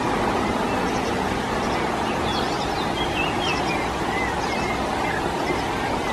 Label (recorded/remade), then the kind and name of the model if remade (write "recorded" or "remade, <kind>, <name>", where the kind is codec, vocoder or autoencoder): recorded